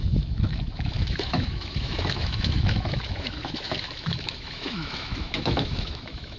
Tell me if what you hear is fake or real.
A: fake